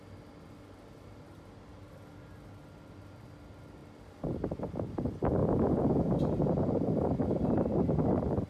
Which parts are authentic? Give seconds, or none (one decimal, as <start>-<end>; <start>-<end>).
0.0-5.4; 6.2-8.5